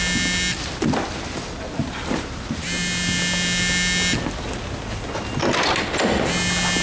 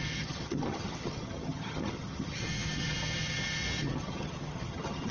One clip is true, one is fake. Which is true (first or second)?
first